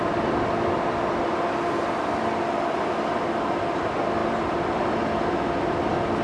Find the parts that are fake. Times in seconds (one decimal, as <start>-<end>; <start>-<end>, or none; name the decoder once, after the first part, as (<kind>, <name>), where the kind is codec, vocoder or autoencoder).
none